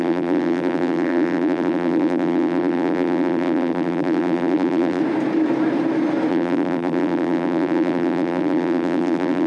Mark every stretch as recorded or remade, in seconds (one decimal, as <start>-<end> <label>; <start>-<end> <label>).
0.0-5.0 remade; 5.0-6.3 recorded; 6.3-9.5 remade